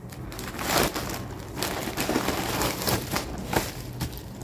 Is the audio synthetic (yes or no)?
no